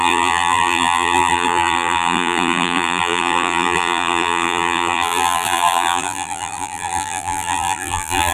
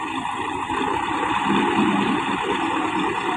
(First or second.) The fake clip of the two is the first